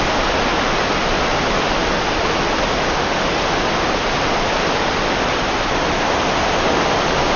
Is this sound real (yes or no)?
yes